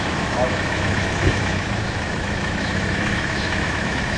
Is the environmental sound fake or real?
fake